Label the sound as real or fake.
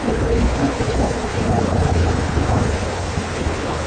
fake